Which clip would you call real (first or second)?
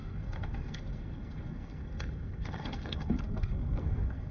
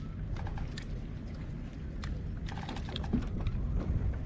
second